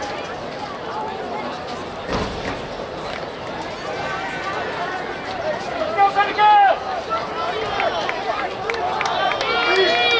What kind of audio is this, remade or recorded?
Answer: recorded